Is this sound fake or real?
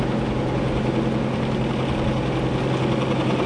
real